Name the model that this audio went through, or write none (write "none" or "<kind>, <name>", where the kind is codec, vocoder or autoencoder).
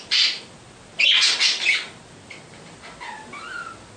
none